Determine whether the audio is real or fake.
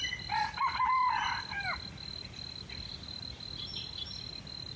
real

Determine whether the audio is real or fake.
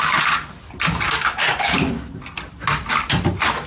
fake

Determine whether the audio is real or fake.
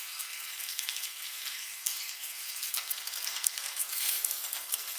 fake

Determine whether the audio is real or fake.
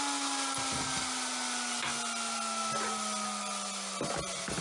real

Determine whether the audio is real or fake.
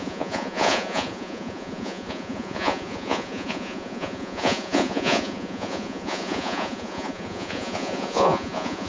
fake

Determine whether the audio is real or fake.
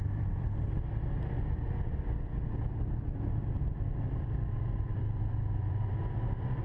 fake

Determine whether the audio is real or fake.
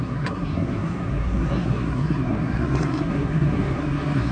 fake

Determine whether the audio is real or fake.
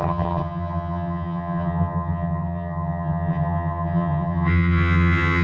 fake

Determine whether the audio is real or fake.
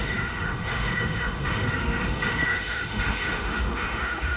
fake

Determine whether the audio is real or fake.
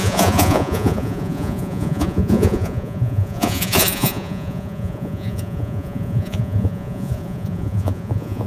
fake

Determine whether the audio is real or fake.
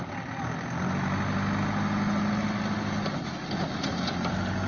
real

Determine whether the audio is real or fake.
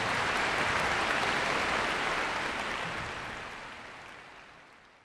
real